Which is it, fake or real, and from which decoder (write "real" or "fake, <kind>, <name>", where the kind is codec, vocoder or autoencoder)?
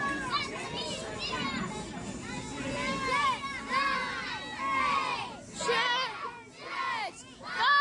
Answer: real